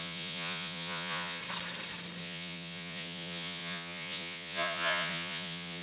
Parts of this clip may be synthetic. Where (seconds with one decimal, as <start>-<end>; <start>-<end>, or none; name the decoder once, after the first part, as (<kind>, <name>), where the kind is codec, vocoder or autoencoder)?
0.0-1.4 (vocoder, Vocos); 2.2-5.8